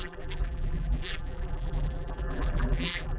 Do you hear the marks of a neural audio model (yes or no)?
yes